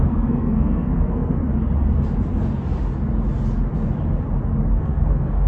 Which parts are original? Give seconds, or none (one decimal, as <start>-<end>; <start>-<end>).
1.4-4.7